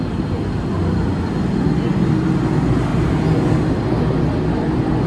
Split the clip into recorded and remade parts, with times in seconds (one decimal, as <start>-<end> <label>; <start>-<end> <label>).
0.0-5.1 recorded